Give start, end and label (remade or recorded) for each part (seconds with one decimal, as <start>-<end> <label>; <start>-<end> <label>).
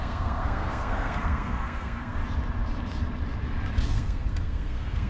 0.0-2.2 remade; 2.2-3.8 recorded; 3.8-5.1 remade